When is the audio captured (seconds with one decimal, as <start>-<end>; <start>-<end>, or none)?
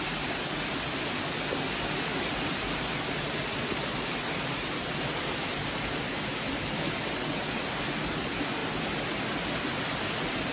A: 0.0-10.5